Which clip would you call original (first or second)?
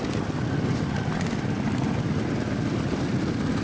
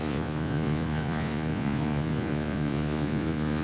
first